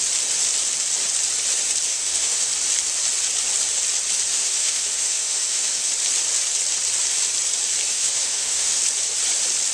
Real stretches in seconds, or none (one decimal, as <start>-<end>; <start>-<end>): 0.0-1.9; 2.5-4.3; 5.9-7.9; 8.8-9.7